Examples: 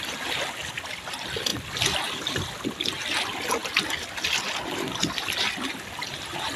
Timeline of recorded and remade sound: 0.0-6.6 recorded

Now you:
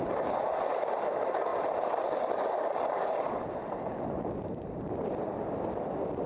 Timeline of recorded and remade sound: 0.0-6.3 recorded

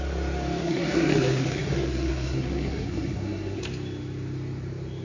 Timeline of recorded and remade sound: 0.0-0.6 recorded; 0.6-3.6 remade; 3.6-5.0 recorded